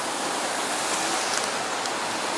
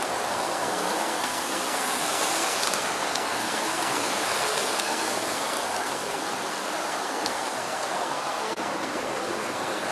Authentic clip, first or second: first